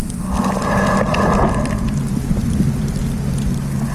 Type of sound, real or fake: real